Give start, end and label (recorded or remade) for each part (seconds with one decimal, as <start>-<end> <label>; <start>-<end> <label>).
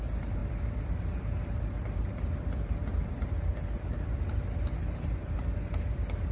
0.0-6.3 recorded